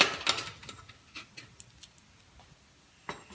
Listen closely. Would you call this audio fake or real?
real